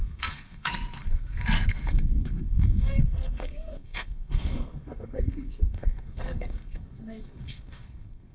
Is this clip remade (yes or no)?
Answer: yes